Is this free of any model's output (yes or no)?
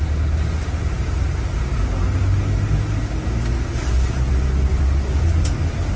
yes